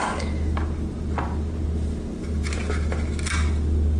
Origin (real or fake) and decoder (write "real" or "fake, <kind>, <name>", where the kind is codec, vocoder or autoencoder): real